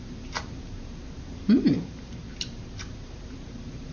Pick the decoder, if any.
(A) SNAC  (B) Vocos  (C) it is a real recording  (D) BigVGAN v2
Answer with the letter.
D